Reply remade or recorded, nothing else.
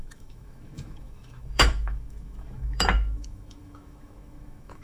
remade